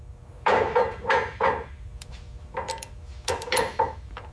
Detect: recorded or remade remade